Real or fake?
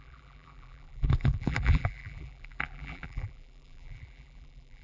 fake